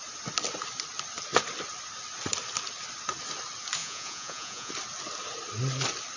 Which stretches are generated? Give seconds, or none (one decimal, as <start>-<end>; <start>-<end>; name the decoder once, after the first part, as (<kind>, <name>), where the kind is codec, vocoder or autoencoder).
3.8-4.7 (vocoder, Vocos)